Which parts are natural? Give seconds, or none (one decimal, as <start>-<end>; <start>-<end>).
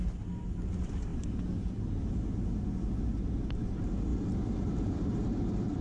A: 0.0-4.1